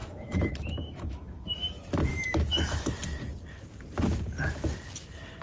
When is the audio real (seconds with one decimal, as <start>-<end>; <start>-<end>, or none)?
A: 1.4-2.1; 2.9-5.4